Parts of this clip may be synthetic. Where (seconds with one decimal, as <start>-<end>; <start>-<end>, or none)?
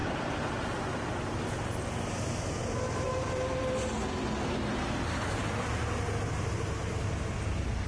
none